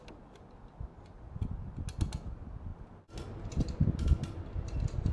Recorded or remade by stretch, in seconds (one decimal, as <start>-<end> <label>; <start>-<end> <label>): 0.0-5.1 recorded